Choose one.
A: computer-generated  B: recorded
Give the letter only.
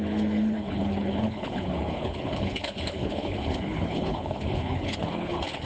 A